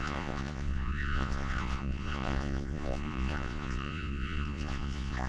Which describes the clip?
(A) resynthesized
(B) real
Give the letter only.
A